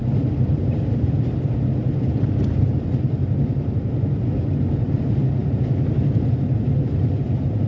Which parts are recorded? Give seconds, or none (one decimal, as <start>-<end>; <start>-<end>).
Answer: 0.0-7.7